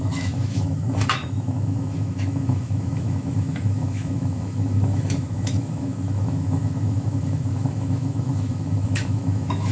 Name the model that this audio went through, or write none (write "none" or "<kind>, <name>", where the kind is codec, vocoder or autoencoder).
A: autoencoder, DAC-VAE